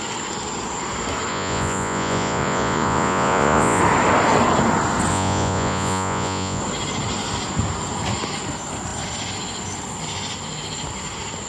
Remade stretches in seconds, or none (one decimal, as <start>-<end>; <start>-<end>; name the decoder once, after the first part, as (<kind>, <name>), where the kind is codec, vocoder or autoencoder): 1.3-3.8 (vocoder, Vocos); 5.1-6.6